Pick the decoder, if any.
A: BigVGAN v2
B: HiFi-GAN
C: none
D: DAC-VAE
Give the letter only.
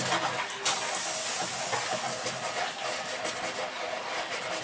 C